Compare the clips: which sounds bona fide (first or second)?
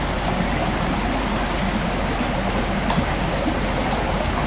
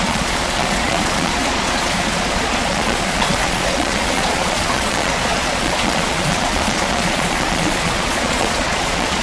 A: first